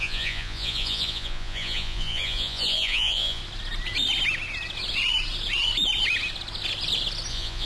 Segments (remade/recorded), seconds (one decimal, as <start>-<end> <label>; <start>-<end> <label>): 0.0-3.4 remade; 3.4-7.3 recorded; 7.3-7.7 remade